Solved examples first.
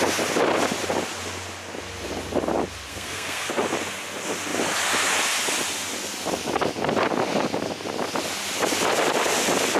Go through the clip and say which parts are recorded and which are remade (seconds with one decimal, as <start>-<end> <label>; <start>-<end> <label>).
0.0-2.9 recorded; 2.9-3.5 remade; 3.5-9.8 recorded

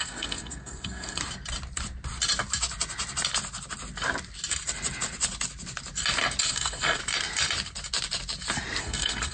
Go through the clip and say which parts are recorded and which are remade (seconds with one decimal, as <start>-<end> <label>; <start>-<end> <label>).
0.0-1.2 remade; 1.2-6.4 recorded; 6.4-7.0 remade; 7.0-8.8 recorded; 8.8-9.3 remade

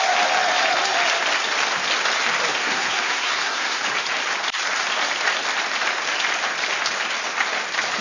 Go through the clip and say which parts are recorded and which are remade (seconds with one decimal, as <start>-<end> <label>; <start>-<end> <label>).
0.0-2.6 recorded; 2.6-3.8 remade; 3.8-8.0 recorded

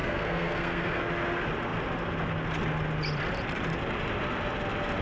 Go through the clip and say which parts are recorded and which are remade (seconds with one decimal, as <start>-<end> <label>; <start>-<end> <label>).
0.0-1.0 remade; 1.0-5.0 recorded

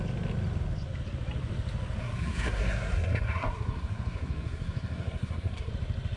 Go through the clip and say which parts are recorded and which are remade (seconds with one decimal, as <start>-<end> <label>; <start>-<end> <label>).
0.0-2.0 recorded; 2.0-5.7 remade; 5.7-6.2 recorded

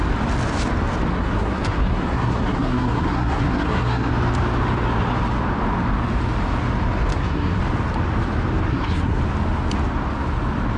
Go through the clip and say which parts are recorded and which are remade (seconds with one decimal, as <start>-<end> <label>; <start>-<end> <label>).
0.0-1.1 recorded; 1.1-4.1 remade; 4.1-7.1 recorded; 7.1-7.6 remade; 7.6-8.7 recorded; 8.7-9.2 remade; 9.2-10.8 recorded

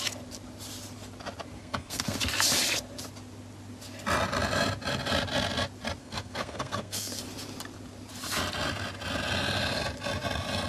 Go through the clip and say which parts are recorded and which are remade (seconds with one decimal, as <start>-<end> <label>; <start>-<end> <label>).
0.0-1.6 recorded; 1.6-2.2 remade; 2.2-6.0 recorded; 6.0-7.2 remade; 7.2-10.7 recorded